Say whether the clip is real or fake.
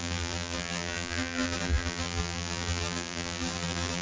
fake